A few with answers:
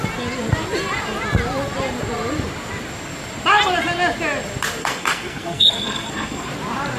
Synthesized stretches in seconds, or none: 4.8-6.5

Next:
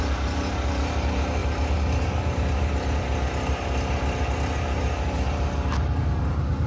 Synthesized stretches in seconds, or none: none